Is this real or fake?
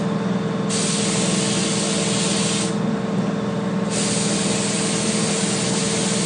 real